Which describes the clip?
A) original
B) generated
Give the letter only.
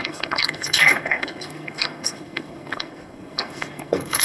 B